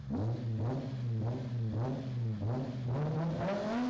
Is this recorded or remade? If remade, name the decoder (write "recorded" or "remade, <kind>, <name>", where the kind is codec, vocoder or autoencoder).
recorded